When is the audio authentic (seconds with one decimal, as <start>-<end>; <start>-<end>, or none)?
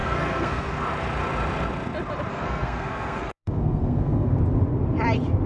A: 0.7-2.3; 4.3-5.5